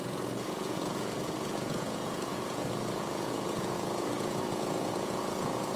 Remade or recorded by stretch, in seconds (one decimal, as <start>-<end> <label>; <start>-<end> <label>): 0.0-5.8 remade